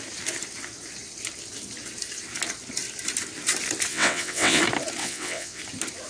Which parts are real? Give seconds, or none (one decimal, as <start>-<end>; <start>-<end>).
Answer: 0.0-3.9; 4.6-5.0; 5.6-6.1